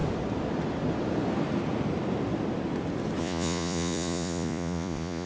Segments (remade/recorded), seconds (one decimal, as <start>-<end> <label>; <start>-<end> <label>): 0.0-3.2 recorded; 3.2-5.3 remade